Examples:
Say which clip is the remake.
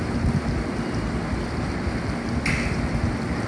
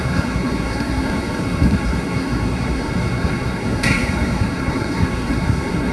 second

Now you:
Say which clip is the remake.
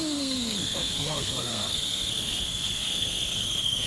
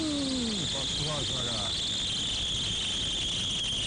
first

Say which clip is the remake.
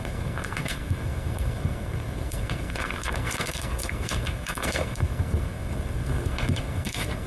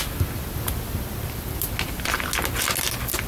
first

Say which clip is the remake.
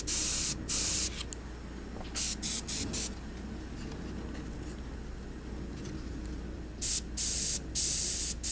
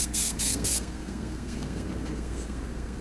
second